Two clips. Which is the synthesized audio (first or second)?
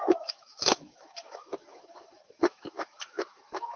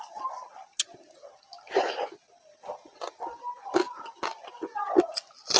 first